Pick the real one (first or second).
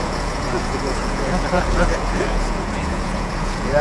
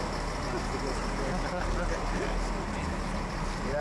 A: second